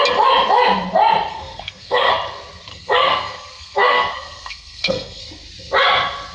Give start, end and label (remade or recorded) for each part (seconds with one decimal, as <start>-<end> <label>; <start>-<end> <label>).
0.0-1.3 recorded; 1.3-2.1 remade; 2.1-2.7 recorded; 2.7-5.2 remade; 5.2-6.3 recorded